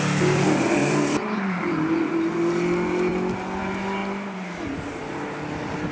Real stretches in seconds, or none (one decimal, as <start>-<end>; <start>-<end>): 0.0-0.8; 2.3-5.9